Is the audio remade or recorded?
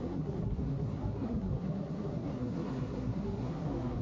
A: remade